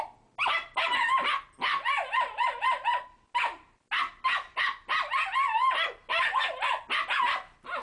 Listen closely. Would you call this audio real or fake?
real